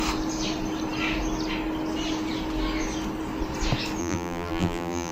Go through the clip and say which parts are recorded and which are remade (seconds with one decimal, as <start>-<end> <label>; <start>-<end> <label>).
0.0-4.0 recorded; 4.0-5.1 remade